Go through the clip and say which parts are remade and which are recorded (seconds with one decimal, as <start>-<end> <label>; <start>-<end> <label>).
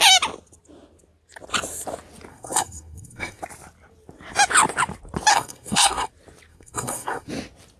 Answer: 0.0-2.3 recorded; 2.3-3.4 remade; 3.4-5.3 recorded; 5.3-6.1 remade; 6.1-6.5 recorded; 6.5-7.3 remade; 7.3-7.8 recorded